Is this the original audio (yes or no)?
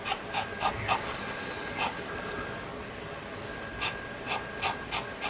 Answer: yes